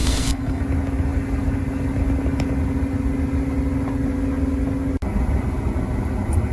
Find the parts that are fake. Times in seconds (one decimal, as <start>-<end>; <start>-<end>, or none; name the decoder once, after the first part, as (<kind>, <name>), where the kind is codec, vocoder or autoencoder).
0.0-0.6 (codec, SNAC)